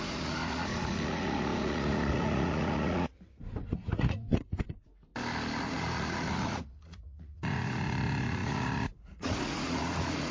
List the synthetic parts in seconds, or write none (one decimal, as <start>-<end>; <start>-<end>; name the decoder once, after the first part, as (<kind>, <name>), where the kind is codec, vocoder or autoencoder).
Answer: 0.0-3.1 (vocoder, Vocos); 3.7-5.1; 5.6-10.3